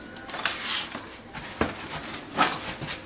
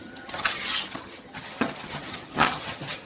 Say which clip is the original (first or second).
first